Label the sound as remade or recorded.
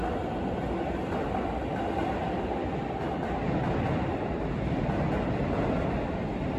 recorded